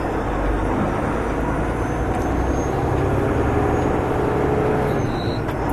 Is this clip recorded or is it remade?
recorded